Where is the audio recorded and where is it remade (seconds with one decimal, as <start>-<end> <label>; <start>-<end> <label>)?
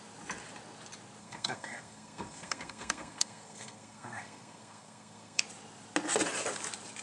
0.0-1.2 recorded; 1.2-5.4 remade; 5.4-7.0 recorded